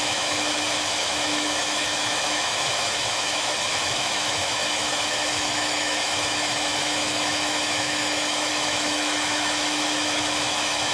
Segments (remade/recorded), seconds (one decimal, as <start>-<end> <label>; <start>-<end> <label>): 0.0-10.9 remade